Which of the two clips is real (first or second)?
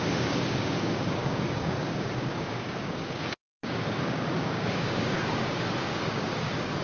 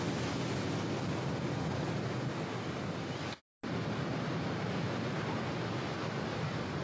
second